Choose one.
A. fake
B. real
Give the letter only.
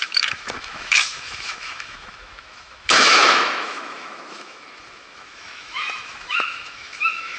A